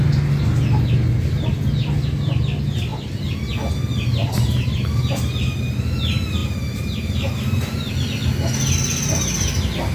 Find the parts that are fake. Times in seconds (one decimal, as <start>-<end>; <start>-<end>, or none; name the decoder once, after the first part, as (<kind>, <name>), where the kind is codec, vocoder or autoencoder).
4.2-5.3 (vocoder, BigVGAN v2); 6.4-7.9